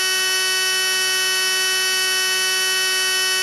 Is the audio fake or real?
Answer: real